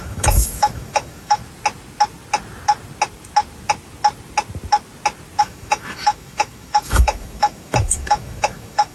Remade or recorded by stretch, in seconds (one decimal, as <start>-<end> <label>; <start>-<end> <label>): 0.0-1.4 remade; 1.4-5.4 recorded; 5.4-8.9 remade